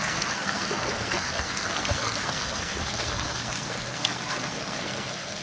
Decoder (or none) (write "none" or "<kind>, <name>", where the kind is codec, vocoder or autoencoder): codec, SNAC